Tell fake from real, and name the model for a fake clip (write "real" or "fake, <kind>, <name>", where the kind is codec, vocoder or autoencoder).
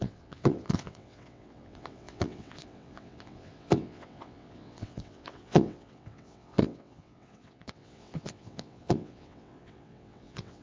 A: fake, vocoder, WaveNeXt